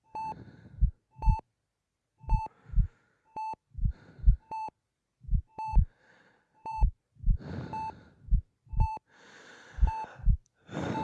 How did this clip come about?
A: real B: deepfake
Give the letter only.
B